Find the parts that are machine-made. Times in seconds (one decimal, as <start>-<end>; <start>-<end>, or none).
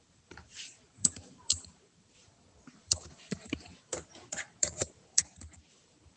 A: 0.0-3.9; 4.6-5.2; 5.7-6.2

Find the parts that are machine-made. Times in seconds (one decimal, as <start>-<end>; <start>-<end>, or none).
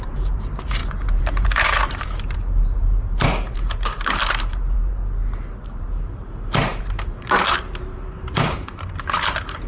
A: 0.0-5.0; 5.7-9.7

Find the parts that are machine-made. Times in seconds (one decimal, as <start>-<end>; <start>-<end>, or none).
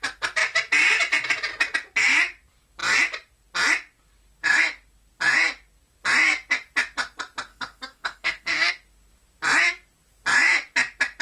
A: 7.5-8.7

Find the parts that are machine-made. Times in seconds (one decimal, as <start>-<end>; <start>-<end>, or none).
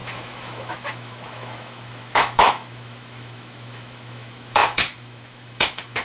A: 0.0-6.0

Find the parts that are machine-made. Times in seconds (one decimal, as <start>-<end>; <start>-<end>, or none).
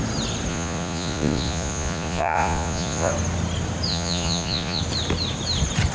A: 0.5-3.1; 3.9-4.8